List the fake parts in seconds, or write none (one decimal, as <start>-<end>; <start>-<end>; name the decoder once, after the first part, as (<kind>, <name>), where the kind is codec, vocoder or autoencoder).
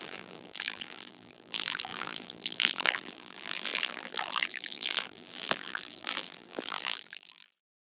0.0-8.0 (vocoder, BigVGAN v2)